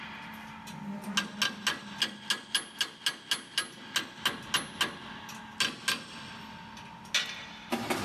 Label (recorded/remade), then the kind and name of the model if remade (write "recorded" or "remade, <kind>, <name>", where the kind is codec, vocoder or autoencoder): recorded